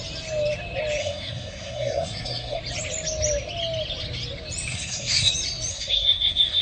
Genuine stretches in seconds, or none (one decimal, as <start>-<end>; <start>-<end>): 0.0-1.0; 2.6-4.7; 5.3-5.7